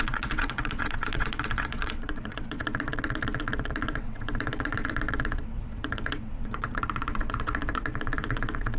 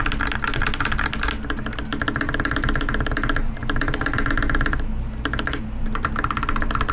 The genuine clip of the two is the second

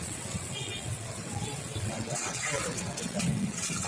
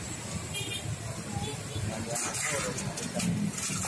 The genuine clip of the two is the second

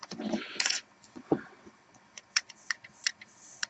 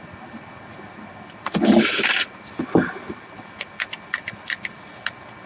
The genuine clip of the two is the second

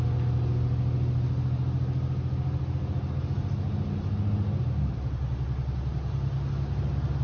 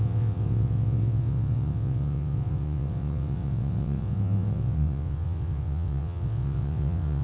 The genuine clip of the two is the first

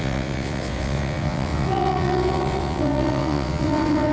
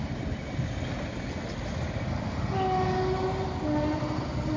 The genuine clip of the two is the second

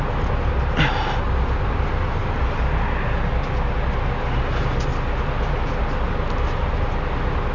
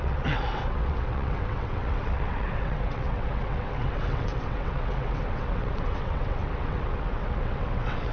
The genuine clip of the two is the first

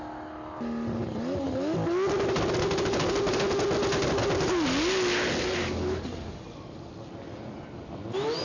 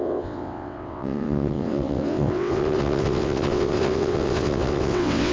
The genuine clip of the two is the first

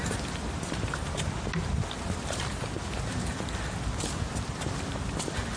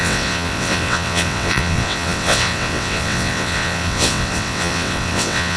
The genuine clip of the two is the first